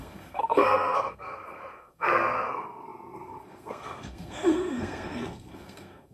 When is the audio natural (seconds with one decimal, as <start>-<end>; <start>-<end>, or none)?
none